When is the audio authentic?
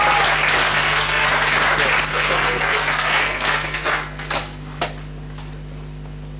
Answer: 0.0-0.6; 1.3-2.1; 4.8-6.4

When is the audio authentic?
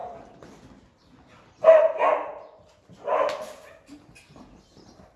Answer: 0.0-5.2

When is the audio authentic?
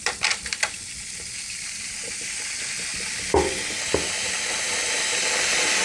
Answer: 0.0-5.8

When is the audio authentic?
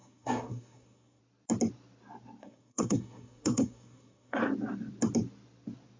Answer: 1.2-2.4; 4.4-6.0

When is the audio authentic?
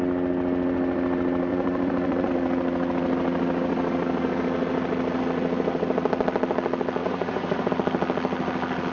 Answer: 0.0-1.5; 2.3-7.0; 7.7-8.9